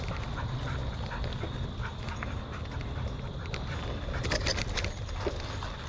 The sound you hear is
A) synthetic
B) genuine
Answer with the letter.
B